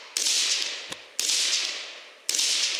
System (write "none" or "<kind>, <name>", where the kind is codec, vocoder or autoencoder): none